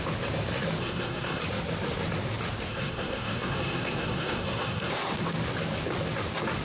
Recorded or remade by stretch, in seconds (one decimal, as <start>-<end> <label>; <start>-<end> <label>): 0.0-0.8 recorded; 0.8-1.4 remade; 1.4-2.7 recorded; 2.7-4.9 remade; 4.9-6.6 recorded